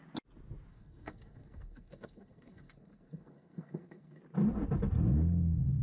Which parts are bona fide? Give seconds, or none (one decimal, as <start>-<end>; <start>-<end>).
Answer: 0.0-0.7; 4.2-5.8